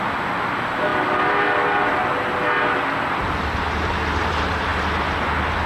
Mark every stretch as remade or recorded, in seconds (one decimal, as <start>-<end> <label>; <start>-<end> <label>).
0.0-5.7 recorded